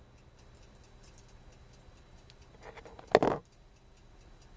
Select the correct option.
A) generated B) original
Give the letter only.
B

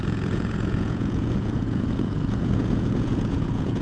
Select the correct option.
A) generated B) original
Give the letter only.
A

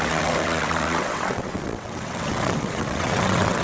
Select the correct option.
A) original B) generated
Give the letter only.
B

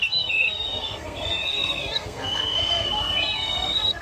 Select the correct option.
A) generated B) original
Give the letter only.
A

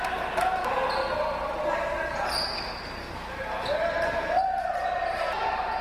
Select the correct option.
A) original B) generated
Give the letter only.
A